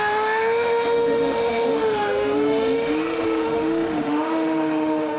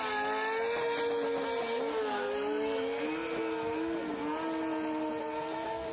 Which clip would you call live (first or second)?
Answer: second